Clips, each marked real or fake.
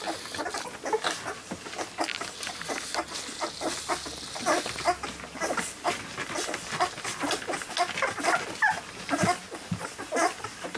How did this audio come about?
real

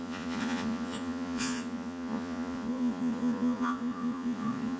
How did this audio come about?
fake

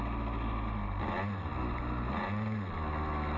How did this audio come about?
real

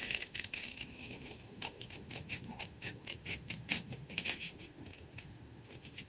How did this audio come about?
fake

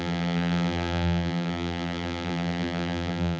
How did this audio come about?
fake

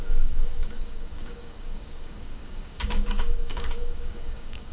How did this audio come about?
fake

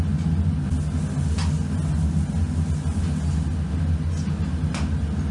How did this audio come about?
real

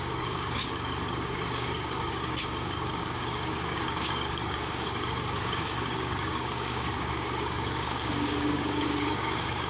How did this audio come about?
fake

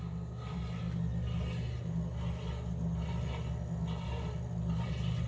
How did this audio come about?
real